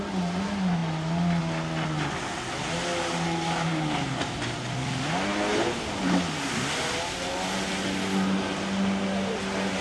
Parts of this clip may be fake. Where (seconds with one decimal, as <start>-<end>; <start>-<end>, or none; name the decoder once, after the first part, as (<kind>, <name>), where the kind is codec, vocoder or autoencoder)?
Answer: none